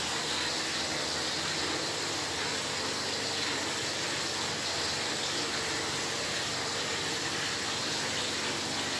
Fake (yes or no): no